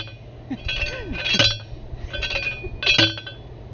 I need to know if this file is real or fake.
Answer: real